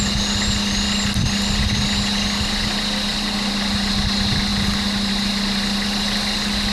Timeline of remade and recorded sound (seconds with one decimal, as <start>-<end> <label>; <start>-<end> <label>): 0.0-6.7 recorded